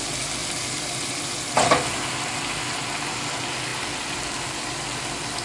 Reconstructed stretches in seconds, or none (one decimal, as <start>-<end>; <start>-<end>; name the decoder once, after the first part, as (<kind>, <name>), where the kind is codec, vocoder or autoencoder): 0.4-1.3 (vocoder, BigVGAN v2); 3.7-4.6